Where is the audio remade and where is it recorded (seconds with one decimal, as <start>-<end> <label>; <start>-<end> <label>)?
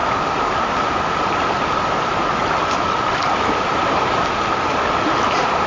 0.0-5.7 recorded